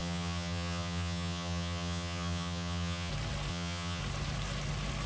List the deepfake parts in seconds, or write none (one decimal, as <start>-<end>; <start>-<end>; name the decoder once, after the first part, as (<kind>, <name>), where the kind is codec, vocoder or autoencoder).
0.0-3.1 (vocoder, HiFi-GAN); 3.5-4.0